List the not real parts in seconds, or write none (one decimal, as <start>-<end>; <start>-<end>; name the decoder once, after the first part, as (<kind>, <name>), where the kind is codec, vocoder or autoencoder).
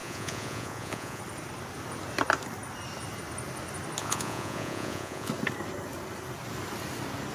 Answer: 0.0-1.2 (vocoder, Vocos); 4.0-5.3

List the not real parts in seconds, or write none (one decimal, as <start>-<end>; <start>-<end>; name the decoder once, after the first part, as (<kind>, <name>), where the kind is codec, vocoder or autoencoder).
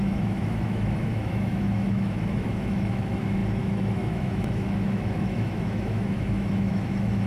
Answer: 0.0-7.3 (autoencoder, DAC-VAE)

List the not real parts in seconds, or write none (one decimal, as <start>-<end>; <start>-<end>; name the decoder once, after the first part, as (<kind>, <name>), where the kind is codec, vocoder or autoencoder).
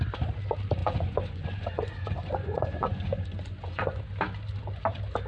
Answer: 0.8-4.0 (vocoder, Vocos)